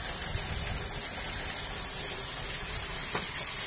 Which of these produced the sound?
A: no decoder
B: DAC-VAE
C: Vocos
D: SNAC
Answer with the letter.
A